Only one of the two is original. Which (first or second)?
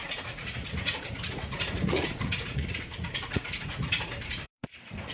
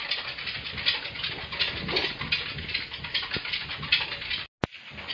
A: second